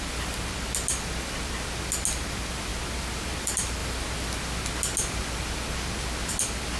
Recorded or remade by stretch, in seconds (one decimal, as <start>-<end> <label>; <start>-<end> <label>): 0.0-6.8 recorded